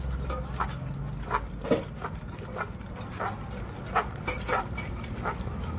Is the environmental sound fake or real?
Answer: real